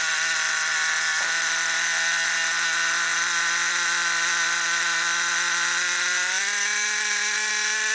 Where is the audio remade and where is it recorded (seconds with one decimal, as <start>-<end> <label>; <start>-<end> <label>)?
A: 0.0-3.1 recorded; 3.1-7.5 remade; 7.5-7.9 recorded